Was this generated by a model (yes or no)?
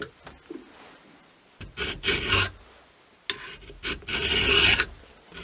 no